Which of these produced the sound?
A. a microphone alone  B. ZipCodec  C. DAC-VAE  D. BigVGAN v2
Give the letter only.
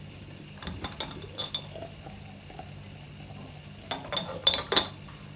A